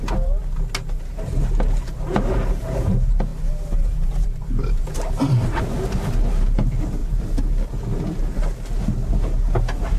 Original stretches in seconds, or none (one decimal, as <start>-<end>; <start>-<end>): 0.0-3.3; 5.6-10.0